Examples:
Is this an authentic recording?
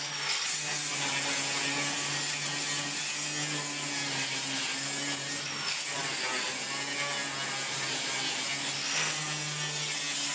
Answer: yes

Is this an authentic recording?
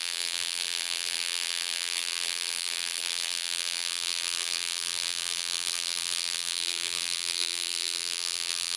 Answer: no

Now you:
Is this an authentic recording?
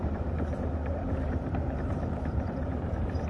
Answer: no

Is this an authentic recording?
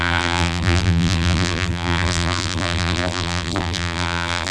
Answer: no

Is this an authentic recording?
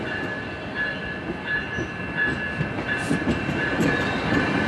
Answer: yes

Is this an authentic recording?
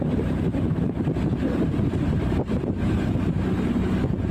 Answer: yes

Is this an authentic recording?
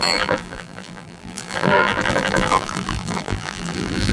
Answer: no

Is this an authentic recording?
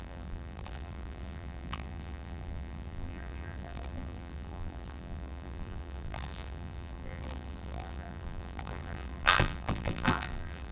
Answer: no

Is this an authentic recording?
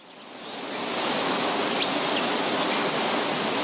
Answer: yes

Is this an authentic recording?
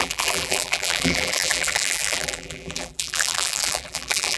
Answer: no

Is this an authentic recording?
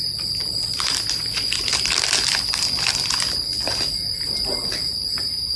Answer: no